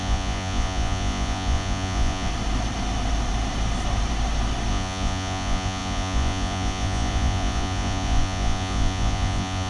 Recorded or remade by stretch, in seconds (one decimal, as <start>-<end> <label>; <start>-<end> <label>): 0.0-2.3 remade; 2.3-4.7 recorded; 4.7-9.7 remade